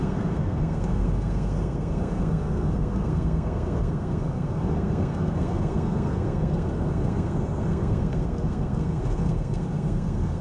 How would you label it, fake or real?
fake